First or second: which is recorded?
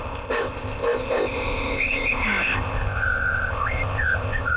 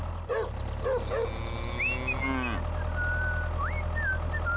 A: second